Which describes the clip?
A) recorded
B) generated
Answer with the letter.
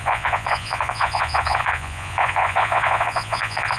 B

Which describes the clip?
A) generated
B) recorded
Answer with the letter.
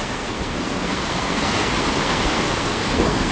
A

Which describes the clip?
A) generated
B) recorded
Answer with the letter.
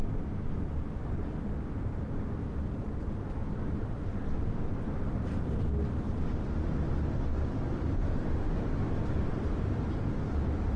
B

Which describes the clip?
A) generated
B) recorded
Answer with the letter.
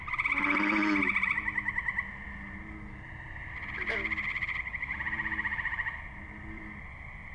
B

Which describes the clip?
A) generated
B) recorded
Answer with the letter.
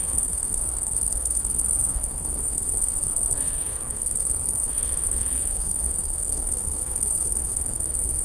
A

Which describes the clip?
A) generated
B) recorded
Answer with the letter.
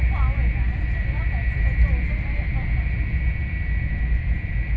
B